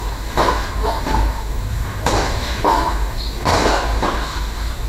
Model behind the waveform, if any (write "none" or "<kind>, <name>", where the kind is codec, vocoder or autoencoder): codec, DAC